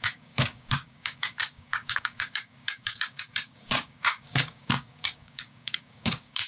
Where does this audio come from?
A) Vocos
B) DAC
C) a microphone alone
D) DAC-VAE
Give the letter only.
B